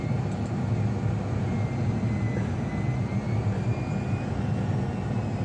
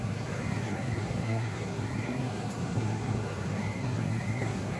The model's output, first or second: second